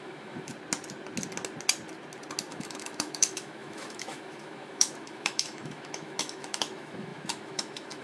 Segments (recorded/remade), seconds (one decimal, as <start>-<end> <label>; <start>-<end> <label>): 0.0-0.5 remade; 0.5-2.5 recorded; 2.5-8.0 remade

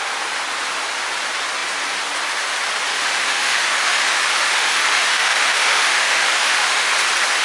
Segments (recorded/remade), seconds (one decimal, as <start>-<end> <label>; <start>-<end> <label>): 0.0-2.9 recorded; 2.9-6.9 remade; 6.9-7.4 recorded

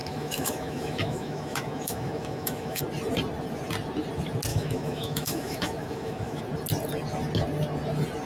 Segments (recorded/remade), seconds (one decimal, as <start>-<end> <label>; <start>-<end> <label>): 0.0-2.8 remade; 2.8-4.5 recorded; 4.5-6.4 remade; 6.4-8.3 recorded

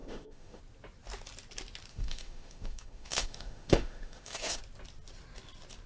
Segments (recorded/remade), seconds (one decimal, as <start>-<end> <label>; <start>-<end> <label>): 0.0-0.6 remade; 0.6-1.9 recorded; 1.9-4.6 remade; 4.6-5.9 recorded